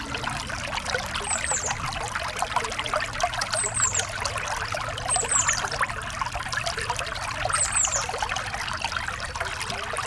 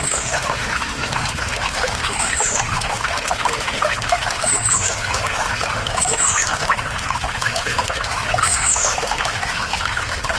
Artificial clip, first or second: second